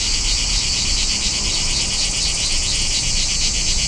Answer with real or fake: real